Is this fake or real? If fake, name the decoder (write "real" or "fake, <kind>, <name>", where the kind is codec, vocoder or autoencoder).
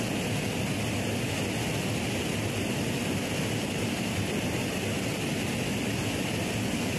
real